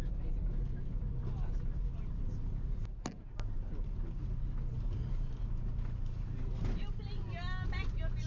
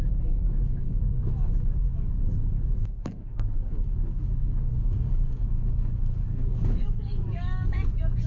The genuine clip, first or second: first